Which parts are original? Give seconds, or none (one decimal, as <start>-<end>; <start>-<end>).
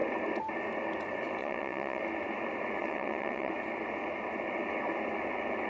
0.0-1.4; 2.0-2.8; 3.5-5.7